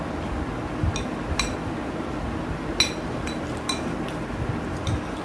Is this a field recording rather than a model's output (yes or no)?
yes